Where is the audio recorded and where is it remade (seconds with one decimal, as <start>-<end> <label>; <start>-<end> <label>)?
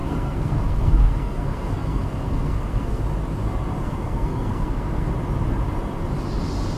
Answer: 0.0-3.0 remade; 3.0-3.8 recorded; 3.8-5.1 remade; 5.1-6.8 recorded